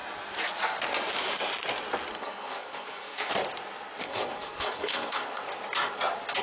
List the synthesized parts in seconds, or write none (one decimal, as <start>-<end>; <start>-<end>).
2.1-3.3; 4.0-5.4